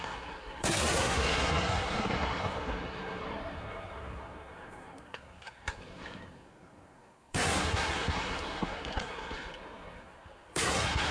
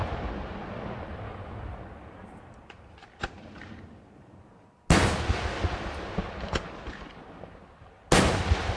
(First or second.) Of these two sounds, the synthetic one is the first